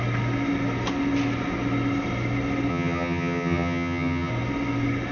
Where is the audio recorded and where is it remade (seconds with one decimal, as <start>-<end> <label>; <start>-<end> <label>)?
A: 0.0-2.7 recorded; 2.7-4.3 remade; 4.3-5.1 recorded